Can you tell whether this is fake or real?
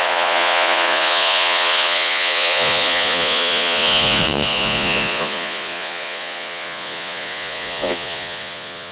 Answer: fake